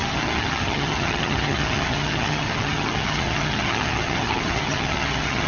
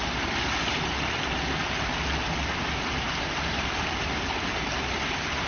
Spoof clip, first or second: first